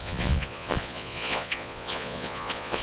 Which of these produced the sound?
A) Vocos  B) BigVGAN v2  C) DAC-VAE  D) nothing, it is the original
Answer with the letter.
A